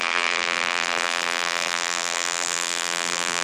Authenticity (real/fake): fake